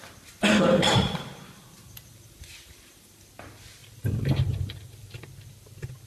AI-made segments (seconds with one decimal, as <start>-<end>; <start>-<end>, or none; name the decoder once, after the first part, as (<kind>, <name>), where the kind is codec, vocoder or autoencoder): 0.8-3.3 (vocoder, BigVGAN v2); 3.8-5.2